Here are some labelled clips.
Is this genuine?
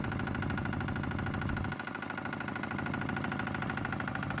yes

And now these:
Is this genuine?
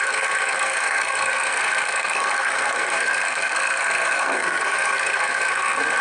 no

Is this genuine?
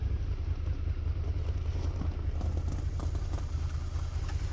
yes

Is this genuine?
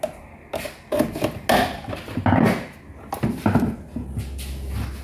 yes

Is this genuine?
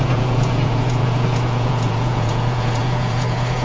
no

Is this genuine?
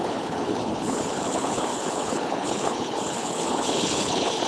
no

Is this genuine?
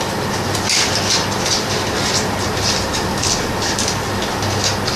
yes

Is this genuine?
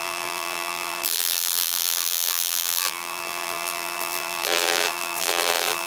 no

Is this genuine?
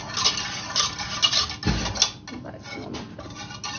yes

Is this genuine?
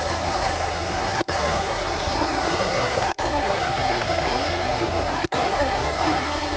no